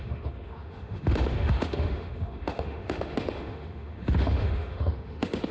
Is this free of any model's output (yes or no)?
no